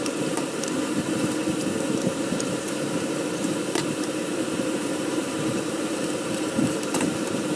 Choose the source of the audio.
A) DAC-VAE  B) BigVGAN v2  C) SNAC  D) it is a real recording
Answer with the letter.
B